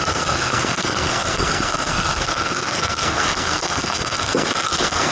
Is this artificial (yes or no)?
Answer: yes